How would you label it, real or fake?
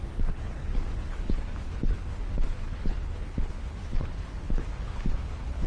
fake